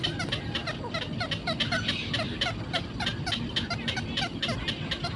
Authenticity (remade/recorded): recorded